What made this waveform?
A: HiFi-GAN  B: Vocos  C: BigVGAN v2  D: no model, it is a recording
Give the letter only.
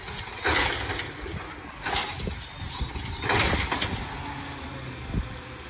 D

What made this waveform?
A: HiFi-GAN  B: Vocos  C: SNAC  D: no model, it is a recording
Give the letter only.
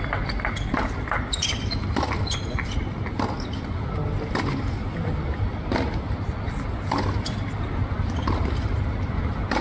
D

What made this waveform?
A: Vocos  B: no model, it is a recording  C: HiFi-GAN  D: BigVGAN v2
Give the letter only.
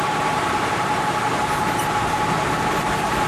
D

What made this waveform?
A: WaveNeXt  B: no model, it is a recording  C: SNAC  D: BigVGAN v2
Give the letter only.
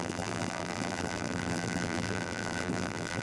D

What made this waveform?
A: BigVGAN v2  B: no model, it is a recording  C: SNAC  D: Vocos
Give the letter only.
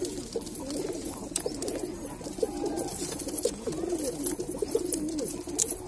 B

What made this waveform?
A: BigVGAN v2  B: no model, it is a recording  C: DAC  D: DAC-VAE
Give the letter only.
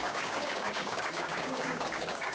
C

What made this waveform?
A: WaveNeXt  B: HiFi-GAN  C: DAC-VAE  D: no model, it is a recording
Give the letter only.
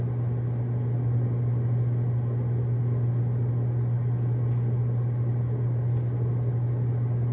D